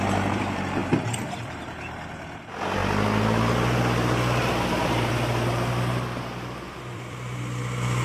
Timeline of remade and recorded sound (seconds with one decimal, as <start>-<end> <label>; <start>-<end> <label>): 0.0-0.8 remade; 0.8-1.3 recorded; 1.3-2.8 remade; 2.8-6.7 recorded; 6.7-8.0 remade